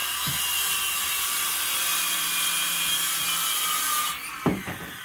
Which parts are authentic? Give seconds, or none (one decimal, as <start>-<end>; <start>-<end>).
3.0-5.0